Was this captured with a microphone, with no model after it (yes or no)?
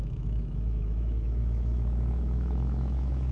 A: no